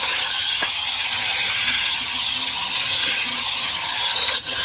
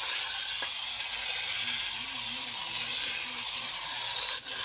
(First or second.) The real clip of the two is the second